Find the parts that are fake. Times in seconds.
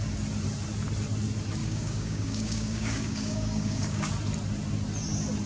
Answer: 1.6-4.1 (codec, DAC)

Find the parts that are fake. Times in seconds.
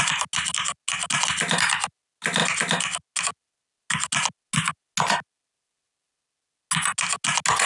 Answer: none